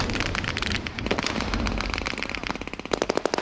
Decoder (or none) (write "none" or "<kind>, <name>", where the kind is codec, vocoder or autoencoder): none